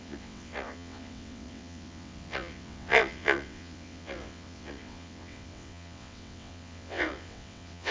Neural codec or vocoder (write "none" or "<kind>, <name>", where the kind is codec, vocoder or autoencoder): vocoder, WaveNeXt